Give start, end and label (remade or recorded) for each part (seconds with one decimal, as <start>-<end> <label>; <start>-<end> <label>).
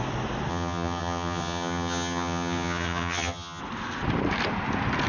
0.0-0.5 recorded; 0.5-3.6 remade; 3.6-5.1 recorded